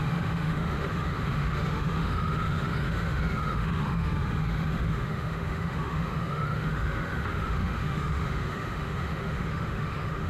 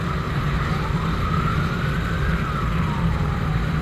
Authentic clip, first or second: second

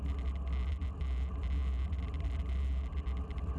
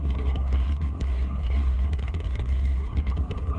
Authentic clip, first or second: first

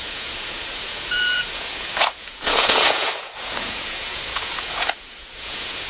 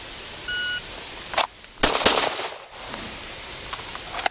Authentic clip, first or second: second